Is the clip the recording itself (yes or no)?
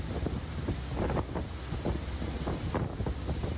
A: yes